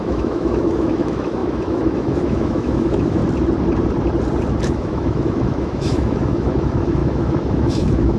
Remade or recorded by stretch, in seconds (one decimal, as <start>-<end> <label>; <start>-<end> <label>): 0.0-3.2 remade; 3.2-4.6 recorded; 4.6-8.2 remade